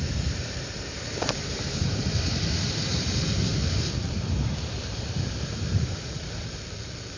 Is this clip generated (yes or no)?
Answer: yes